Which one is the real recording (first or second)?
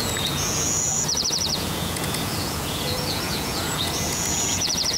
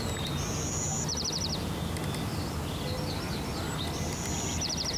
second